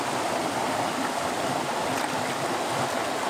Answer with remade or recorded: recorded